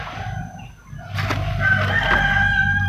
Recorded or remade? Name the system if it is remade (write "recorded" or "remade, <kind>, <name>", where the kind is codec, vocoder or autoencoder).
recorded